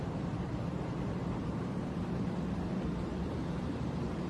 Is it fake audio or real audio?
fake